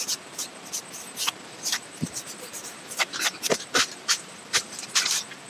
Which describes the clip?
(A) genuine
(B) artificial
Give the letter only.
B